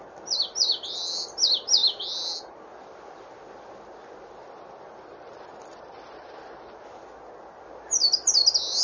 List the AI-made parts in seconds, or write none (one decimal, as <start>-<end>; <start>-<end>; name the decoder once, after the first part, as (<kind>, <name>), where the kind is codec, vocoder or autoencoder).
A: none